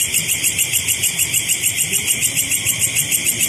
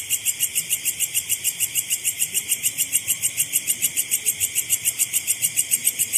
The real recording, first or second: first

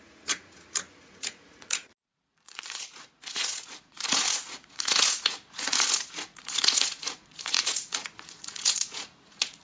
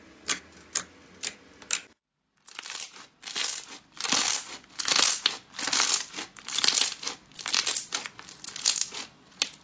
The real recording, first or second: second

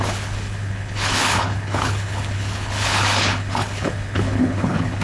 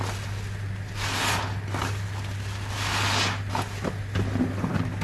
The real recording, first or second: second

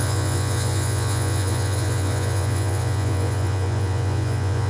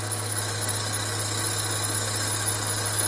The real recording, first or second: second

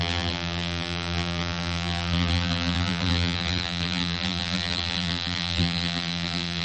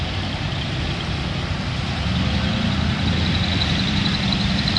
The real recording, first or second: second